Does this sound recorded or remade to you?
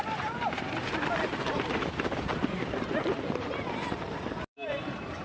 remade